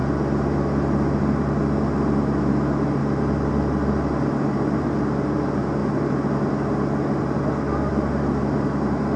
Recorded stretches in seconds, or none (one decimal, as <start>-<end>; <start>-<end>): 0.0-9.2